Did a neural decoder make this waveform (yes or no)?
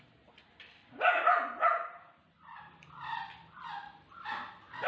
yes